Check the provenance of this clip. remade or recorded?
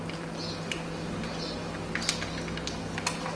recorded